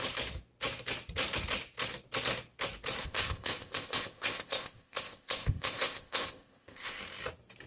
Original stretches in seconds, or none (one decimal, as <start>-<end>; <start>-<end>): 0.0-3.0; 7.0-7.7